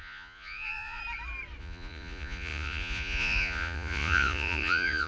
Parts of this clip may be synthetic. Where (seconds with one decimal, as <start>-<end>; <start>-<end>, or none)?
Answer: 0.0-1.0; 1.6-5.1